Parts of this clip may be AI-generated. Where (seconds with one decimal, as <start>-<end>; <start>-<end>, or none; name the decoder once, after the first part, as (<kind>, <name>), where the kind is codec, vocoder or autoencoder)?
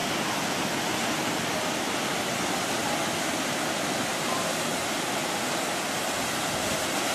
3.6-5.2 (vocoder, BigVGAN v2)